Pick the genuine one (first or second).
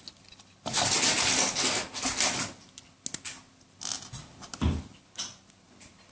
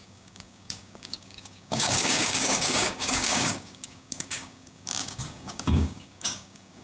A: first